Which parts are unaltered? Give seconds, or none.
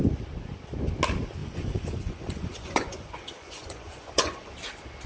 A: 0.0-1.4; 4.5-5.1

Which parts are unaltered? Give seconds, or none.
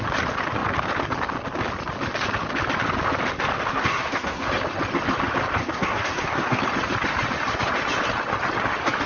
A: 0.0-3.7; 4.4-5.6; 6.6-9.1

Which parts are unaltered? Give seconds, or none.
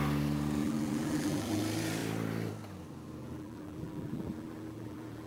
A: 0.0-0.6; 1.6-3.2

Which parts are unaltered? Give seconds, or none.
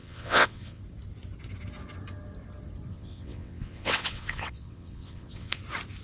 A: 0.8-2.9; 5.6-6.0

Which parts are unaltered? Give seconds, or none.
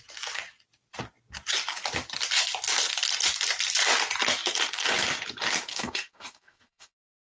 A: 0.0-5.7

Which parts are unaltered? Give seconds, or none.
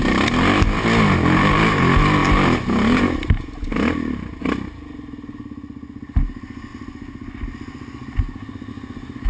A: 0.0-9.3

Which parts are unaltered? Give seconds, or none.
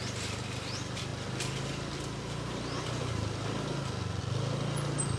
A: 0.0-5.2